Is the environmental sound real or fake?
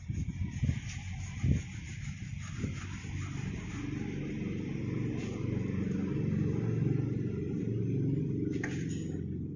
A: real